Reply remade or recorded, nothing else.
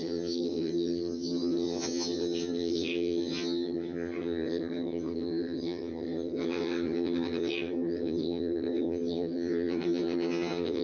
remade